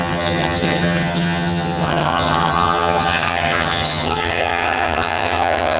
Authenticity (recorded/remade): remade